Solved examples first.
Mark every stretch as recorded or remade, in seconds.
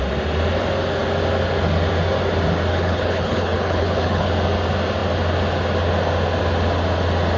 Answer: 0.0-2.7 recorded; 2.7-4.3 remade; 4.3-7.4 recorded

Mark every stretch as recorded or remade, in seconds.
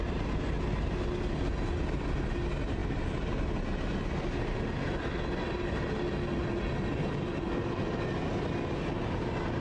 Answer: 0.0-9.6 recorded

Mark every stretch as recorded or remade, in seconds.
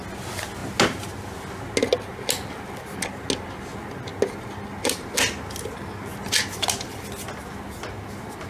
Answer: 0.0-8.5 recorded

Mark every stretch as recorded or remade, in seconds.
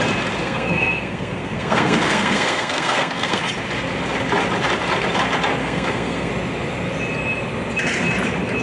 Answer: 0.0-0.4 recorded; 0.4-3.4 remade; 3.4-5.6 recorded; 5.6-6.3 remade; 6.3-8.6 recorded